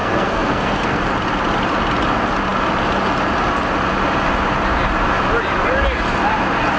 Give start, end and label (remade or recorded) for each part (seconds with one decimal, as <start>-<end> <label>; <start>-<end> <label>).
0.0-1.0 remade; 1.0-6.8 recorded